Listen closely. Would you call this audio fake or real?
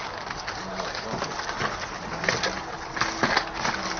real